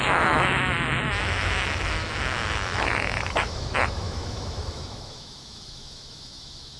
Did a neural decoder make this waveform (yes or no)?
yes